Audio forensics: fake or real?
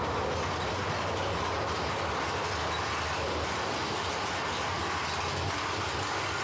real